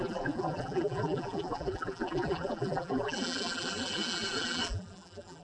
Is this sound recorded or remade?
remade